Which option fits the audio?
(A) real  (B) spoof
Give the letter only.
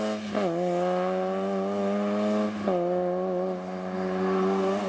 A